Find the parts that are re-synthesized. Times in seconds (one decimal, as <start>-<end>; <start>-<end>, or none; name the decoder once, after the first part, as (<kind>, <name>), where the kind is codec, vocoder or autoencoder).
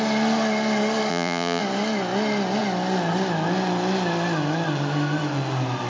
1.1-1.6 (vocoder, Vocos)